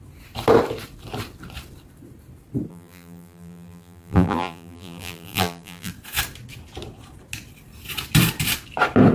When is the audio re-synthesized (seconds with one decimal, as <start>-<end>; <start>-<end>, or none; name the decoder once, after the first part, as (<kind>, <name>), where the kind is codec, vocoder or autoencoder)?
2.7-5.9 (vocoder, BigVGAN v2)